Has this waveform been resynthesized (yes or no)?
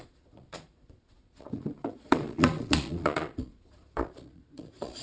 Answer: yes